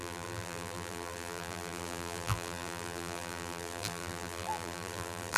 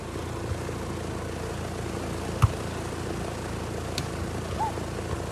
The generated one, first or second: first